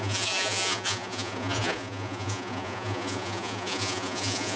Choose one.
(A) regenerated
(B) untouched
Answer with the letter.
A